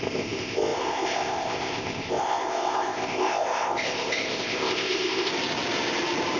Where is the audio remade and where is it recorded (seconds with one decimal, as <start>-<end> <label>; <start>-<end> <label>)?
0.0-5.3 remade; 5.3-6.4 recorded